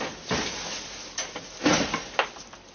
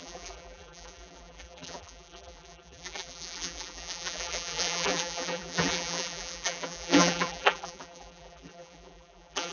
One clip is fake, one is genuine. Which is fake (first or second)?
second